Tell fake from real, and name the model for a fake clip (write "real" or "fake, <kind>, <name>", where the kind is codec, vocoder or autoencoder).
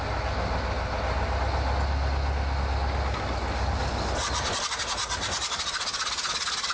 real